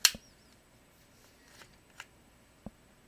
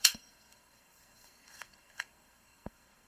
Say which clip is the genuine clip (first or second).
first